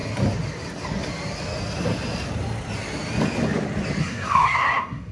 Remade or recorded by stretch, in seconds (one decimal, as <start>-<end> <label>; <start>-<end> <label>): 0.0-4.0 recorded; 4.0-5.1 remade

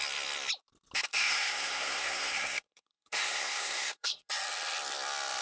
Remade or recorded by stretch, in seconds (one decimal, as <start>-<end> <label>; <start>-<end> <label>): 0.0-1.1 recorded; 1.1-4.3 remade; 4.3-5.4 recorded

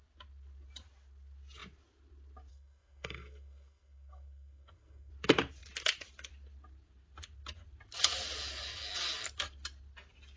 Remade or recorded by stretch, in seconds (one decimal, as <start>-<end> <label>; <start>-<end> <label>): 0.0-2.5 recorded; 2.5-5.1 remade; 5.1-10.4 recorded

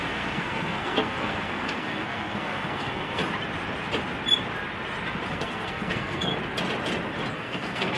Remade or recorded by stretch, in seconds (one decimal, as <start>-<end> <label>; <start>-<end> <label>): 0.0-3.2 remade; 3.2-5.3 recorded; 5.3-6.3 remade; 6.3-7.3 recorded; 7.3-8.0 remade